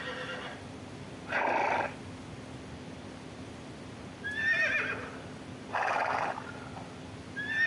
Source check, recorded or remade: recorded